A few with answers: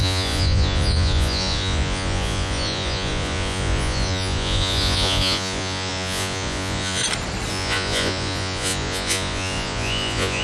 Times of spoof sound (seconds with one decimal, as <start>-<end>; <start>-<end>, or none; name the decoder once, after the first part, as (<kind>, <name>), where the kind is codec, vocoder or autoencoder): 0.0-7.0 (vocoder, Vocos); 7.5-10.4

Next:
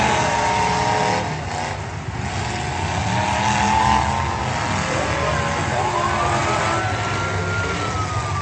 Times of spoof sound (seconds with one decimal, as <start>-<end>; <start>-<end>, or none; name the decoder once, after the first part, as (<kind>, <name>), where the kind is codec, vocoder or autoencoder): none

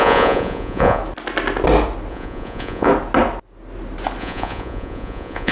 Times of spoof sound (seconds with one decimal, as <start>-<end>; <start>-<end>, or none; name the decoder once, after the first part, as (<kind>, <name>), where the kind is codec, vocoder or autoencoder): 0.0-1.0 (vocoder, Vocos); 2.1-2.9; 4.2-5.5

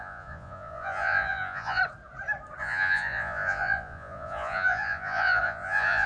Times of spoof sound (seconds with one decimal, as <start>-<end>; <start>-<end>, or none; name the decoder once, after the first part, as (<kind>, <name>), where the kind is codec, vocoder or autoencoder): 0.0-1.8 (vocoder, Vocos); 2.6-6.1

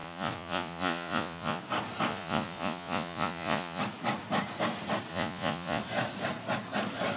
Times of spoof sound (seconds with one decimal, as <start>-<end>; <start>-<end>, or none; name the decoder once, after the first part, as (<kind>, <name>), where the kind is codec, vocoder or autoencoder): 0.0-1.6 (vocoder, Vocos); 2.1-3.8; 5.1-5.8

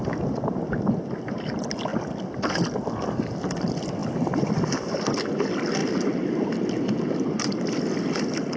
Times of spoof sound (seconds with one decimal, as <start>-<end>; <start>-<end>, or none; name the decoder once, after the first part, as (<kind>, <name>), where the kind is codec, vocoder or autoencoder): none

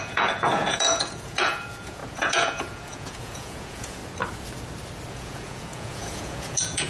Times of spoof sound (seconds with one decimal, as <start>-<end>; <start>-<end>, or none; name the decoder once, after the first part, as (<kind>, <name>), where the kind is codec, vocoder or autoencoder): 0.0-4.0 (vocoder, Vocos); 5.1-6.9

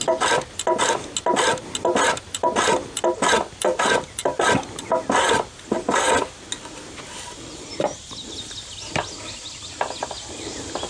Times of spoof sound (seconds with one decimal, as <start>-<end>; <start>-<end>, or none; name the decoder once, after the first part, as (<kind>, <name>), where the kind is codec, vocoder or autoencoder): none